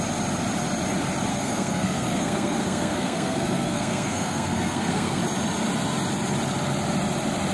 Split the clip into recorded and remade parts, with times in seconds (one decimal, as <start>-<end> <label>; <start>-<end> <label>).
0.0-1.3 recorded; 1.3-5.2 remade; 5.2-7.5 recorded